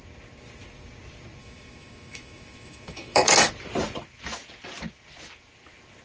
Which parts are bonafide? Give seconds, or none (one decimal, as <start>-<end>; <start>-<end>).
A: 0.0-1.4; 3.5-6.0